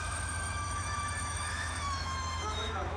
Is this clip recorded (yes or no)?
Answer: no